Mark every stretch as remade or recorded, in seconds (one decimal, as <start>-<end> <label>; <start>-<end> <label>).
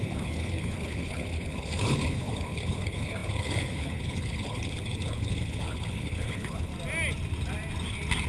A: 0.0-6.7 remade; 6.7-8.3 recorded